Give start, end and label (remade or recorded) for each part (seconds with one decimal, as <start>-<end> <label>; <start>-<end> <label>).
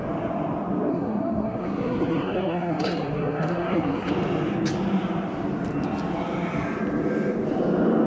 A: 0.0-0.9 recorded; 0.9-4.1 remade; 4.1-8.1 recorded